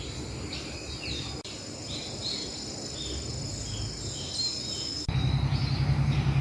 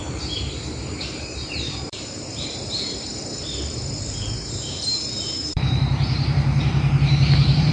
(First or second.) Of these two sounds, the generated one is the second